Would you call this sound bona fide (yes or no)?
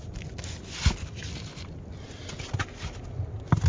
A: yes